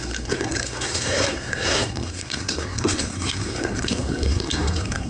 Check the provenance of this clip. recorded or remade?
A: remade